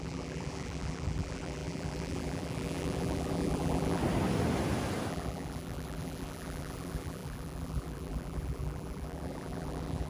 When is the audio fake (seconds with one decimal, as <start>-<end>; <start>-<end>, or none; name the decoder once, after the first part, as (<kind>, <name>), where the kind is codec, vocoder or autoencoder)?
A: 0.0-4.0 (vocoder, BigVGAN v2); 5.1-10.1